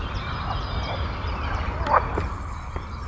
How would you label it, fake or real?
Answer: real